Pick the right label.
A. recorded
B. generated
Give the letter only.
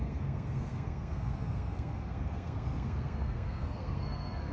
B